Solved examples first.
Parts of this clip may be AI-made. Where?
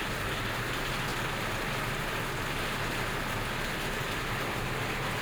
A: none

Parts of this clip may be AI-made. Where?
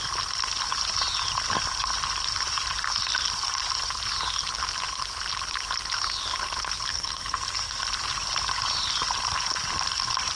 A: 6.9-7.8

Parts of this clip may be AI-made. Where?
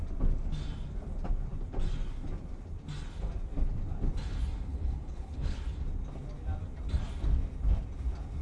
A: 4.7-5.6